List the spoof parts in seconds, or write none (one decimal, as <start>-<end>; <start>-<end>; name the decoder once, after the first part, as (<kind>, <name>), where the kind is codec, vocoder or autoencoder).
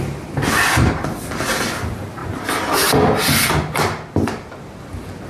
none